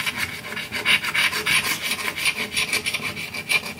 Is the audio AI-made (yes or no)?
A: no